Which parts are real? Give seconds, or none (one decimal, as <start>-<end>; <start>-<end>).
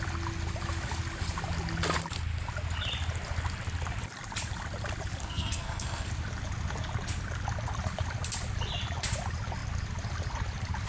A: 0.0-5.2; 6.1-10.9